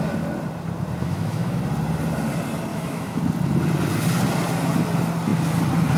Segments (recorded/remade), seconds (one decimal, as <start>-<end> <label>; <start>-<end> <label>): 0.0-1.0 recorded; 1.0-1.6 remade; 1.6-2.7 recorded; 2.7-3.2 remade; 3.2-6.0 recorded